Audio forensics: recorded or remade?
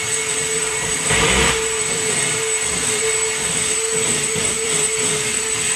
remade